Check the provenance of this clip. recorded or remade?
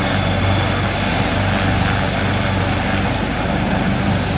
recorded